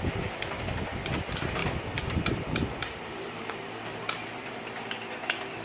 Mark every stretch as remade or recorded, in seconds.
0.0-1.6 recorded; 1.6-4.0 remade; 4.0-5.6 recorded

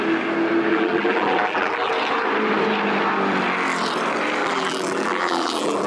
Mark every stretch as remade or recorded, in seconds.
0.0-0.7 recorded; 0.7-1.9 remade; 1.9-4.4 recorded; 4.4-5.9 remade

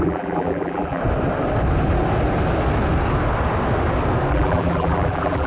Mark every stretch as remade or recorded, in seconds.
0.0-1.0 remade; 1.0-4.3 recorded; 4.3-5.5 remade

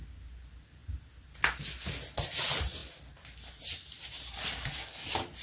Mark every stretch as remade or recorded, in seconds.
0.0-5.4 recorded

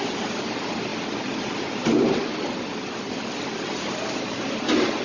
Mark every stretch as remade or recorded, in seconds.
0.0-0.9 recorded; 0.9-3.9 remade; 3.9-5.0 recorded

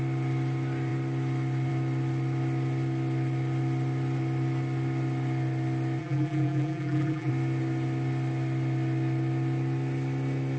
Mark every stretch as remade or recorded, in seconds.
0.0-6.0 recorded; 6.0-7.3 remade; 7.3-10.6 recorded